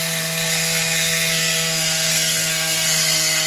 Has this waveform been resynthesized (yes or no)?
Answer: yes